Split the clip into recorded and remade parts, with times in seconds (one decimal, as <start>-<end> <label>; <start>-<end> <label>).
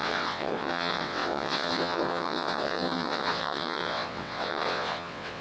0.0-5.4 remade